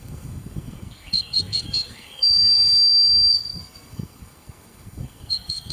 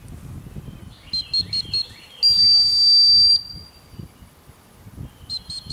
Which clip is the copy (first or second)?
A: first